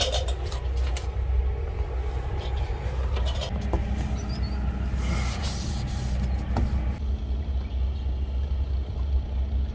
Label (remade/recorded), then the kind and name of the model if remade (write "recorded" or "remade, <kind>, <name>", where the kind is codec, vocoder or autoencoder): recorded